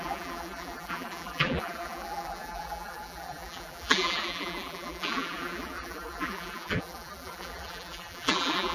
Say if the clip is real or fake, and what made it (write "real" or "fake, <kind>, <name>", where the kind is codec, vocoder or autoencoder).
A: fake, vocoder, BigVGAN v2